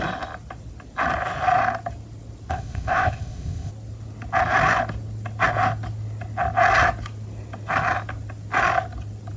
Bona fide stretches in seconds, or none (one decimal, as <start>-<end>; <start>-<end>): 0.0-2.5; 3.7-9.4